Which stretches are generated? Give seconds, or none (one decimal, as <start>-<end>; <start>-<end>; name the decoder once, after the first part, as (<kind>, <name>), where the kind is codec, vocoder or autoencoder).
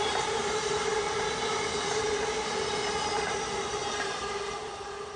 none